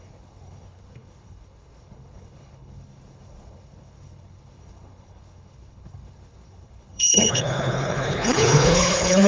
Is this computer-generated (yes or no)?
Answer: yes